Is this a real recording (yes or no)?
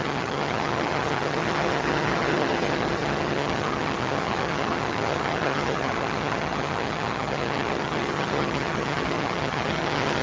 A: no